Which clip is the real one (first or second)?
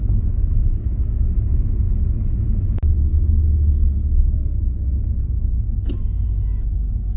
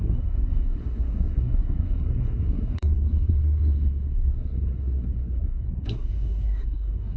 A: first